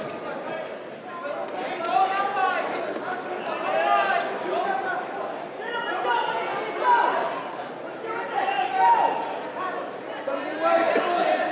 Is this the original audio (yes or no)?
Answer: yes